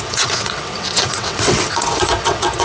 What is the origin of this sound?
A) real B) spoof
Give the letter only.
B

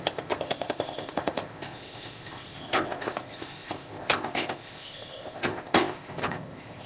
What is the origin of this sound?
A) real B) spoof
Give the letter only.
B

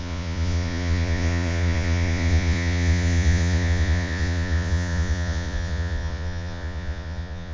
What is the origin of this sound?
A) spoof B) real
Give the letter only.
A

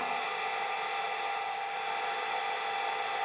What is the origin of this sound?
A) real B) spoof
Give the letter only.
A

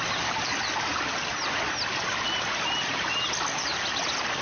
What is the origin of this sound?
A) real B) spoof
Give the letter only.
A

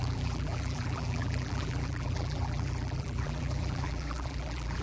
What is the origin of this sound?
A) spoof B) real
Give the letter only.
A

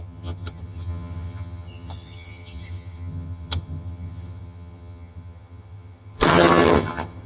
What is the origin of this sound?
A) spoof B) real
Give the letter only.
A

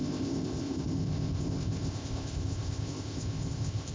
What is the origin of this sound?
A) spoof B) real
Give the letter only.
A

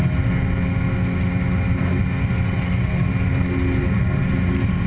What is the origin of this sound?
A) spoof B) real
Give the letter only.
B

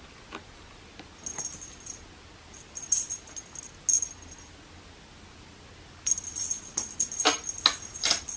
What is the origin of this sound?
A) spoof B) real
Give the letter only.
B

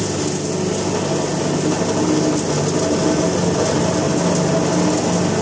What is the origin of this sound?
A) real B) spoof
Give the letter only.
A